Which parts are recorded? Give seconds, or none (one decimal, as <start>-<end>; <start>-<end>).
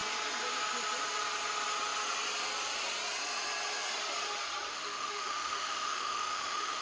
0.0-4.7